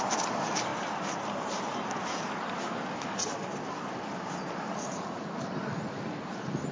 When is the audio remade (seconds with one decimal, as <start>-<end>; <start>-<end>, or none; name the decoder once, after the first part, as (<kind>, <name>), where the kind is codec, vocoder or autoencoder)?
none